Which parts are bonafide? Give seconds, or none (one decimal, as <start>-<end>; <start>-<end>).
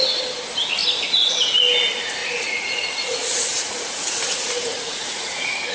0.0-2.2